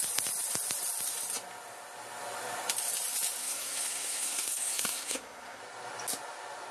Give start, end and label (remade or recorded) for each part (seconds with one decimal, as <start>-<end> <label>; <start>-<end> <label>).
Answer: 0.0-3.4 recorded; 3.4-5.6 remade; 5.6-6.7 recorded